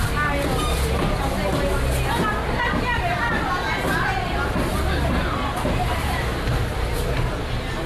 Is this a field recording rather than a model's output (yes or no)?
yes